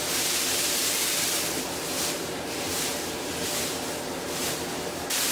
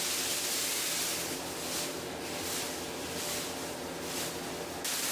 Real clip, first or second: second